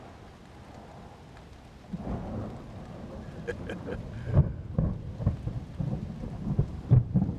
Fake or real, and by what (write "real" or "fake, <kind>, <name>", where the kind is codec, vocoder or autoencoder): real